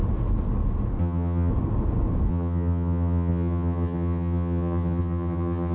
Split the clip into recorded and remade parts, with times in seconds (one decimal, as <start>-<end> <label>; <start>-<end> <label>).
0.0-1.0 recorded; 1.0-1.5 remade; 1.5-2.3 recorded; 2.3-5.7 remade